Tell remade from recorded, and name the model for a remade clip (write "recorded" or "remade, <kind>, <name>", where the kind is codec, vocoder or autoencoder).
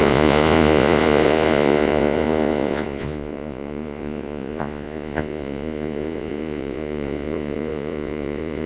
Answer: remade, vocoder, Vocos